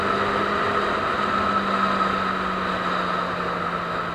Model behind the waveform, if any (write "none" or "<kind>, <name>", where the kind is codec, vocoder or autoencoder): none